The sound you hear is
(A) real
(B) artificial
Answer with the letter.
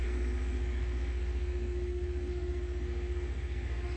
B